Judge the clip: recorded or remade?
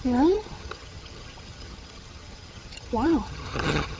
remade